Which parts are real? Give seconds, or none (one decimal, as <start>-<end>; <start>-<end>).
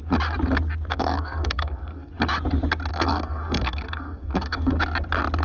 0.0-0.9; 2.1-2.9; 4.7-5.4